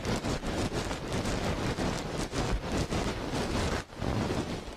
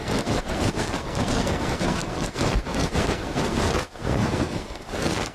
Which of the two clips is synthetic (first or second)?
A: second